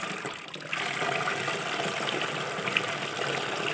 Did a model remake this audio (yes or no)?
no